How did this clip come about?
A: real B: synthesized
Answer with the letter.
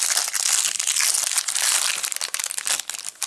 A